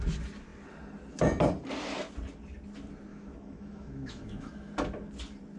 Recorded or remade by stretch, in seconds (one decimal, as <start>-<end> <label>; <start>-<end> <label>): 0.0-3.1 recorded; 3.1-4.7 remade; 4.7-5.6 recorded